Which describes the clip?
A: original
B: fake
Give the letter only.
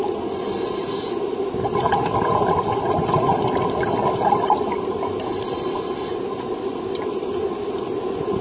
A